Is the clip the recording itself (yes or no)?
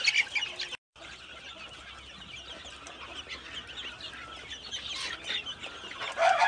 yes